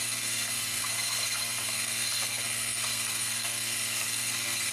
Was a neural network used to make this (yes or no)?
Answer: yes